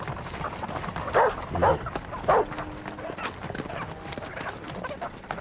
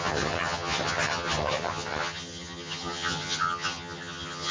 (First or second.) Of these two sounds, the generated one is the second